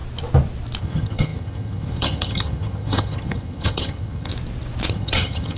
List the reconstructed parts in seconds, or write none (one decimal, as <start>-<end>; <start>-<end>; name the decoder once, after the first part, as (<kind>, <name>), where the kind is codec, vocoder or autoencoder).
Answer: 0.8-4.3 (vocoder, HiFi-GAN); 4.9-5.6